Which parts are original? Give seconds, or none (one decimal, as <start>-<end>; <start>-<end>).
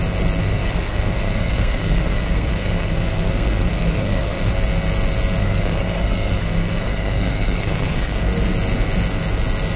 0.0-0.4; 4.5-5.4; 8.2-9.8